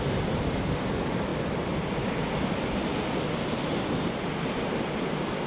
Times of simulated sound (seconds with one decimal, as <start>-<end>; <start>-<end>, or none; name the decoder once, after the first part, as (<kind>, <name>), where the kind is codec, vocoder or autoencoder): none